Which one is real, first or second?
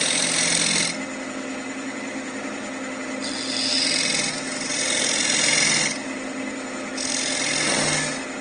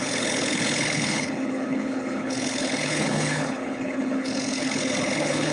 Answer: first